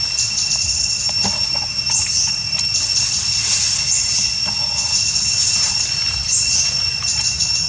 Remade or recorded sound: recorded